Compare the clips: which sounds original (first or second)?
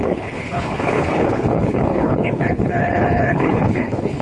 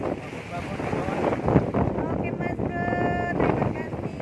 second